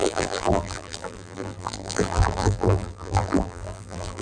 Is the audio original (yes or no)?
no